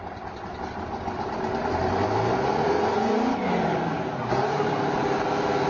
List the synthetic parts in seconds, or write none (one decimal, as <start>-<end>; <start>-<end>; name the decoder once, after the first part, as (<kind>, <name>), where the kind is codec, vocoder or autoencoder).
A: none